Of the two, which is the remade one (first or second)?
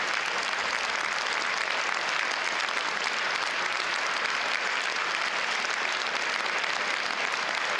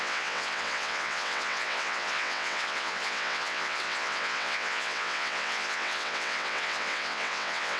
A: second